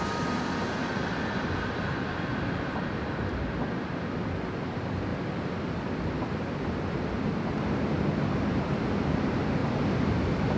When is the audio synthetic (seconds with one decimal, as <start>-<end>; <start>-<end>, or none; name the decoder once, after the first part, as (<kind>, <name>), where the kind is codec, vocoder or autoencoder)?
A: none